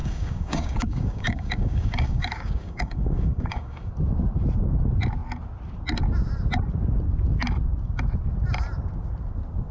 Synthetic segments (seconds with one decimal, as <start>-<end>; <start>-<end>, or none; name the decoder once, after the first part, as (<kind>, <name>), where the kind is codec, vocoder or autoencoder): 0.0-3.9 (codec, DAC)